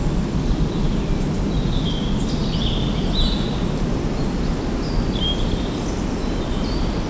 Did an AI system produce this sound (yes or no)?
no